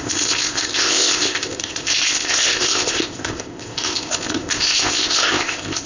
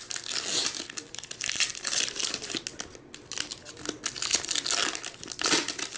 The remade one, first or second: first